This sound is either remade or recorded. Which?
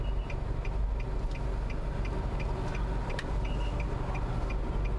recorded